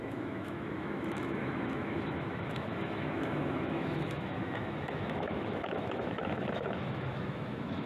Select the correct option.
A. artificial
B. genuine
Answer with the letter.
A